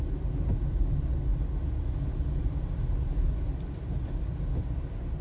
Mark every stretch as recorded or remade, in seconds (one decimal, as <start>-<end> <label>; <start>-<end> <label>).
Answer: 0.0-5.2 recorded